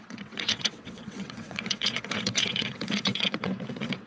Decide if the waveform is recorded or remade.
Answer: remade